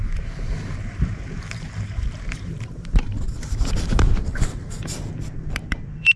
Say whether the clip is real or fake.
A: fake